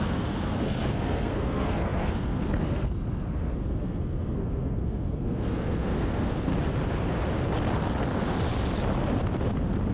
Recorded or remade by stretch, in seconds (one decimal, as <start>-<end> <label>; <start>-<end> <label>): 0.0-6.5 remade; 6.5-9.9 recorded